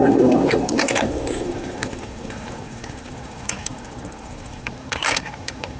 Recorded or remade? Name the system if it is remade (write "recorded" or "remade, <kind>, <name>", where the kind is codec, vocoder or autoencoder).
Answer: remade, codec, SNAC